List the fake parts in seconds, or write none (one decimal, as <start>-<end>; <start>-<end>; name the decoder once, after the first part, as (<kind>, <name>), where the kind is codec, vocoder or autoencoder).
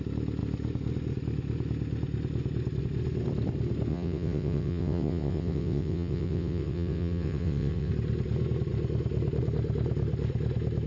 3.9-7.9 (vocoder, WaveNeXt)